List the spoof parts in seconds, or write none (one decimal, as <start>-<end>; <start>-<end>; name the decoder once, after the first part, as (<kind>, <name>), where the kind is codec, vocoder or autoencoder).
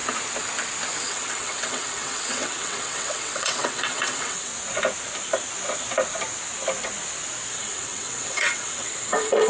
1.0-4.5 (vocoder, WaveNeXt); 7.5-9.5